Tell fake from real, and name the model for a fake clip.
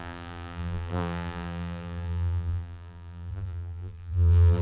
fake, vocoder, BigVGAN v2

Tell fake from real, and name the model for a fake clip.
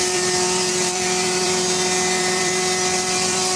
fake, vocoder, BigVGAN v2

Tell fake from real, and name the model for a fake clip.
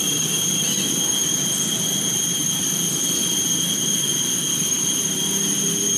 real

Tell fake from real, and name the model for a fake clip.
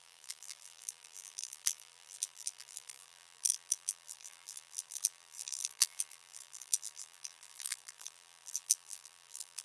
fake, vocoder, BigVGAN v2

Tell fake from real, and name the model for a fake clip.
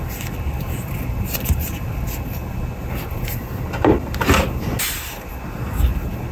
real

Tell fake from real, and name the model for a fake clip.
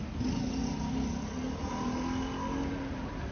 real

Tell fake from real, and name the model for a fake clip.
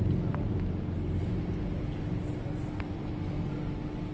real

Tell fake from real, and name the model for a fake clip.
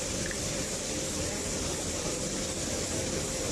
fake, vocoder, BigVGAN v2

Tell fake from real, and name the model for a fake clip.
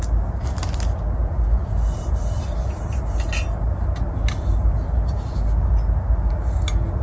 real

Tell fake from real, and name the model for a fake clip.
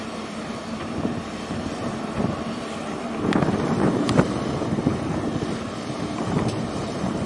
fake, vocoder, BigVGAN v2